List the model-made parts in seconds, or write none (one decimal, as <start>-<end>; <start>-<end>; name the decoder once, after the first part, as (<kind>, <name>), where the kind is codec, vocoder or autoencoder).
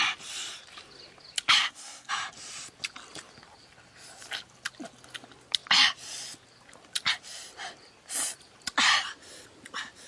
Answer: 1.6-2.1 (codec, SNAC)